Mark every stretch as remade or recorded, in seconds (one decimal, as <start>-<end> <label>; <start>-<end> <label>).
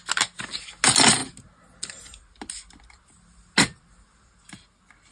0.0-5.1 recorded